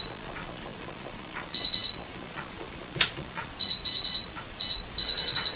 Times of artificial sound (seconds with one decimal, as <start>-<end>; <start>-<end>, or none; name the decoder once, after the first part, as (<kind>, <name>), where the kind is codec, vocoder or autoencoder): 0.0-5.6 (vocoder, Vocos)